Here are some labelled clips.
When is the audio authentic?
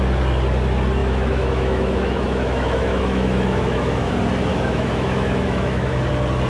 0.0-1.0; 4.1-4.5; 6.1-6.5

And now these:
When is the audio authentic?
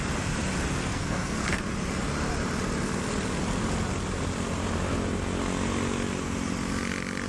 0.0-0.8; 1.6-7.3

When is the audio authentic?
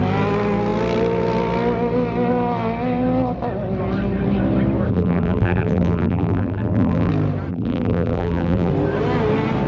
0.0-4.9; 7.1-7.5; 8.7-9.7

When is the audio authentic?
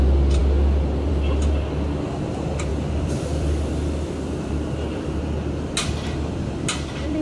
0.0-2.7; 5.2-7.2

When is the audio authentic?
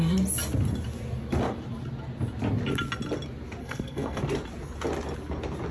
0.0-3.6; 4.2-5.7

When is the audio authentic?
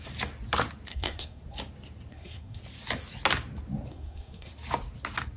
0.0-0.9; 1.4-2.1; 2.6-3.9; 4.5-5.4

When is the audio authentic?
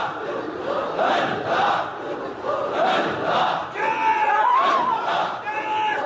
1.9-5.1